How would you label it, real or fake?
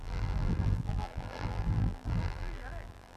fake